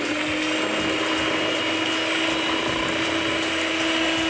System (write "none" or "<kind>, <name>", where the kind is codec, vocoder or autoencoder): none